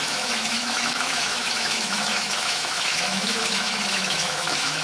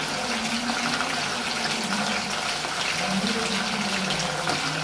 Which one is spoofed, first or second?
first